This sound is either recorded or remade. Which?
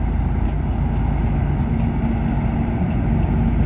recorded